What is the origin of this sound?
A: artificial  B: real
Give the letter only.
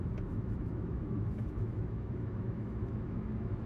A